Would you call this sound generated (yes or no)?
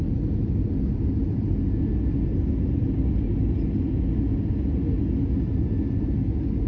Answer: no